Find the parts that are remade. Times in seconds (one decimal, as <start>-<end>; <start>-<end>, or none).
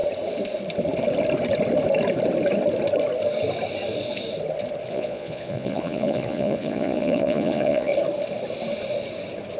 4.9-7.9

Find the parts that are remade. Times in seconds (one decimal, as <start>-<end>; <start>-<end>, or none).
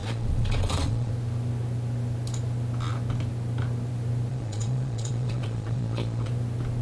0.0-1.1; 4.3-6.3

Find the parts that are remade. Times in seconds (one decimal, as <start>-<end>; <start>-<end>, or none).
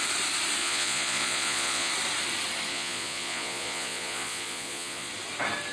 0.6-1.9; 2.7-5.1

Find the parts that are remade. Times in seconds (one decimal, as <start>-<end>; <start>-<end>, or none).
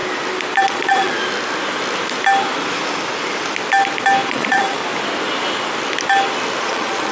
0.6-1.2; 4.3-4.8; 6.6-7.1